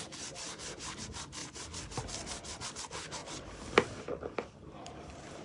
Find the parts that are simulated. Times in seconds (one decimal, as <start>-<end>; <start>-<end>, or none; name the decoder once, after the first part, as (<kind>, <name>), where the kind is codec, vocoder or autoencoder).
none